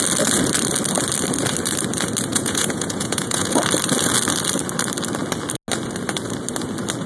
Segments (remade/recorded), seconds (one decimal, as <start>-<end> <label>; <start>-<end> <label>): 0.0-2.3 recorded; 2.3-3.6 remade; 3.6-7.1 recorded